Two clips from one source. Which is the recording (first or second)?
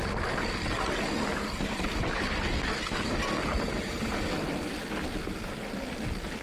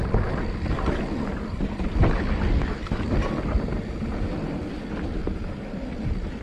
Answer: first